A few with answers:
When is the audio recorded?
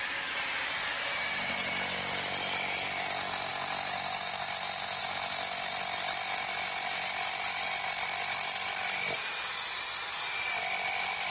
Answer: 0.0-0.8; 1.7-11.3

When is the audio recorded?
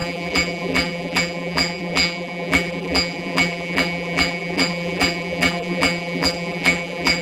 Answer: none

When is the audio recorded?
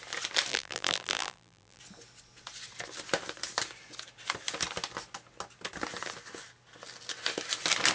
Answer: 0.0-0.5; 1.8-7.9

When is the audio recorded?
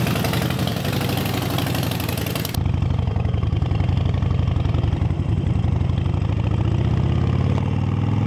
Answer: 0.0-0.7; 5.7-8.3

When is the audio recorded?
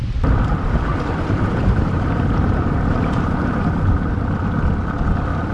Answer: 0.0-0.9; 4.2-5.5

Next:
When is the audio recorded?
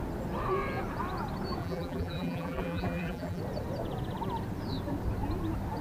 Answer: 0.0-1.6; 3.4-5.8